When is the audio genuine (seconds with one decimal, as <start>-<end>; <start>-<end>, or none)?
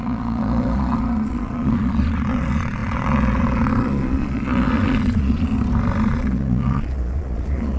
5.5-6.1